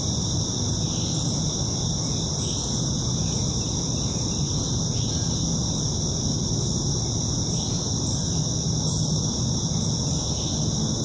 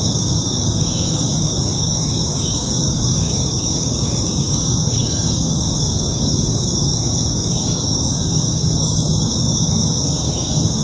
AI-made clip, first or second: second